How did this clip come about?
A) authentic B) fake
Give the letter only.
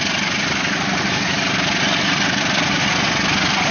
A